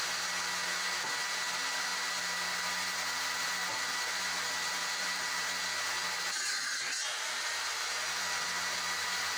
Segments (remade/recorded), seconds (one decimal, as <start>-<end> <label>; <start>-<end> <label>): 0.0-4.8 recorded; 4.8-5.3 remade; 5.3-9.4 recorded